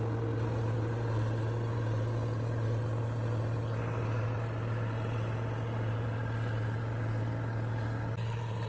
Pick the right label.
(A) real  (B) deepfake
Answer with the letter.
A